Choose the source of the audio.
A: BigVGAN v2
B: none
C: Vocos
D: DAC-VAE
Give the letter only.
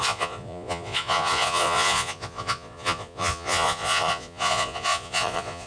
C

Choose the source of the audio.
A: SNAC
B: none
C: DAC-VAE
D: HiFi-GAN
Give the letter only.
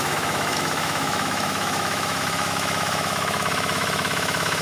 C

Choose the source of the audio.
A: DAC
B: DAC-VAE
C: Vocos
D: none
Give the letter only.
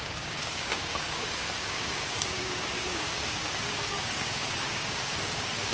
A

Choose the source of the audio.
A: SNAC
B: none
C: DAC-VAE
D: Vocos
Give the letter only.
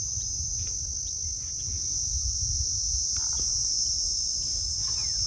B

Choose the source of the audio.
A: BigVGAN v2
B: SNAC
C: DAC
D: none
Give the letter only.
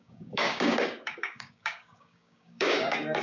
C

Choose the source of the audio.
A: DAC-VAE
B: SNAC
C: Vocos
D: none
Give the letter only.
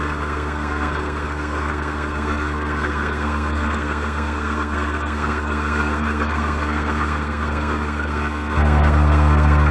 B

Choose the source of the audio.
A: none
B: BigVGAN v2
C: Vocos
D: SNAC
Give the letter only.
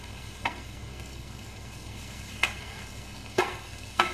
D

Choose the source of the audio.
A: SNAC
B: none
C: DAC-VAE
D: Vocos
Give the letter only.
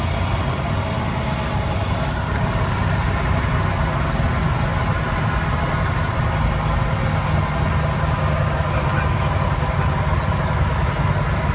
B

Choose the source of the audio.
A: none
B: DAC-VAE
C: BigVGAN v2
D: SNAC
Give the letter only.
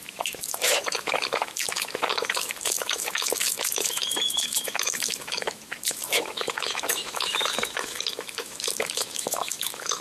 B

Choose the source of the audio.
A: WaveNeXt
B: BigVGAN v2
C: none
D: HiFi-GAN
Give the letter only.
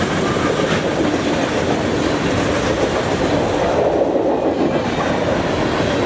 C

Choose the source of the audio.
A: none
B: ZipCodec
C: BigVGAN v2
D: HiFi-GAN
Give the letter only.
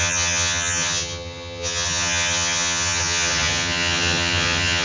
D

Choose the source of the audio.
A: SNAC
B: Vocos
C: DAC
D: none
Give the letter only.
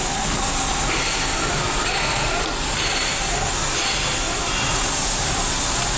D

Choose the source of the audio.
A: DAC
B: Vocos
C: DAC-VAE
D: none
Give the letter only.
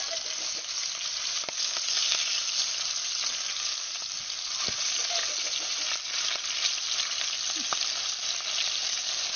D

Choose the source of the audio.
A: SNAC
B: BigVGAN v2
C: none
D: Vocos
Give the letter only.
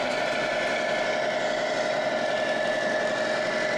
C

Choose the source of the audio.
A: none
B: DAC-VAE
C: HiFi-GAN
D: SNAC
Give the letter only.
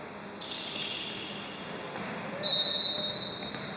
A